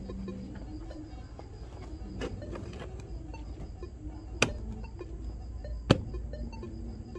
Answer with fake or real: real